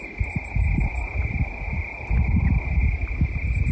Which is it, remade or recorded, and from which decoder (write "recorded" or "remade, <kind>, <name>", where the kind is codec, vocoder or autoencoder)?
recorded